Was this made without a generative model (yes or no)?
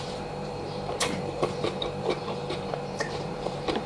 no